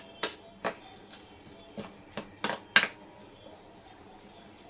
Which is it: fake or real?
real